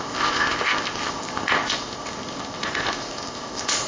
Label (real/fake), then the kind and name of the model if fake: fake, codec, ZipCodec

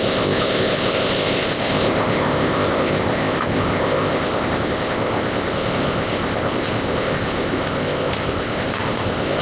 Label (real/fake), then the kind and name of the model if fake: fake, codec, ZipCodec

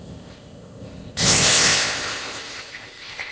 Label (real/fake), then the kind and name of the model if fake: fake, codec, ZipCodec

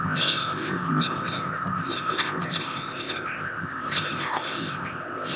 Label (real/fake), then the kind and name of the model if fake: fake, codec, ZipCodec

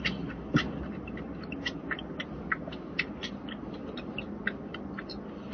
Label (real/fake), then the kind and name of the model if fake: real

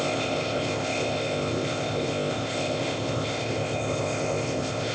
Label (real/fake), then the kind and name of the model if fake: fake, codec, ZipCodec